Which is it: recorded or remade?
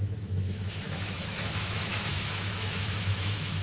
remade